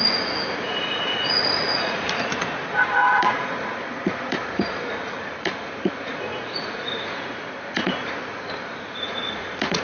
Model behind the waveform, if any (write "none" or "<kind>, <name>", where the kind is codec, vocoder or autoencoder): vocoder, Vocos